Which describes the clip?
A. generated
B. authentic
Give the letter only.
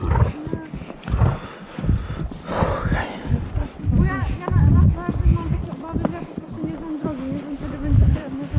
B